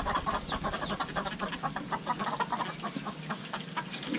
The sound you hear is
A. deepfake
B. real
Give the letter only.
B